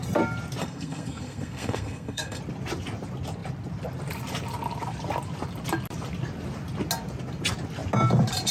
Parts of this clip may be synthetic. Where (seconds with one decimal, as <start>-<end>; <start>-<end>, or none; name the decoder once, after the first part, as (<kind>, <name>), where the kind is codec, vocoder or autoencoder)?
0.6-2.4 (codec, SNAC)

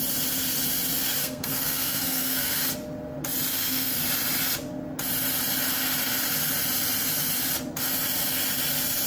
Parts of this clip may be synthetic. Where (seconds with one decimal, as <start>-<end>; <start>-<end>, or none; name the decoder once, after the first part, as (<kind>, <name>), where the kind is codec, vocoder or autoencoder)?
1.2-2.6 (codec, SNAC); 3.5-4.0

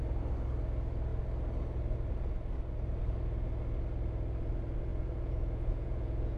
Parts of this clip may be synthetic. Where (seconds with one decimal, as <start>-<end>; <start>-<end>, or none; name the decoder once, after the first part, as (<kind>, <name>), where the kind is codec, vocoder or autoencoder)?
4.9-6.4 (vocoder, Vocos)

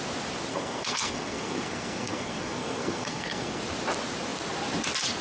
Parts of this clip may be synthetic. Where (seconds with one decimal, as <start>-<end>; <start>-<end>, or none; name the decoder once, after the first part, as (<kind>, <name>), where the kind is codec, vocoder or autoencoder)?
0.5-3.6 (codec, SNAC)

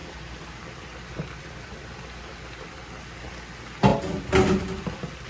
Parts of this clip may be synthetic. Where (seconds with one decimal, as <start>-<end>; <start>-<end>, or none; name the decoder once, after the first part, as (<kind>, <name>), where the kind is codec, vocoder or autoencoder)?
0.0-3.2 (vocoder, BigVGAN v2)